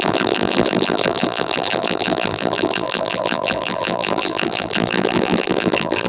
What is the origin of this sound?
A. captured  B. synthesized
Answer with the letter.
B